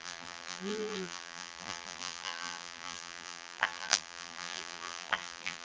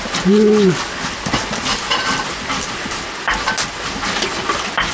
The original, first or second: second